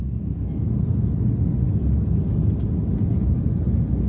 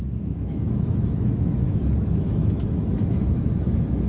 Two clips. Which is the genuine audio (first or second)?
first